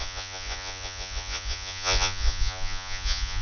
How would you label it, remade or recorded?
remade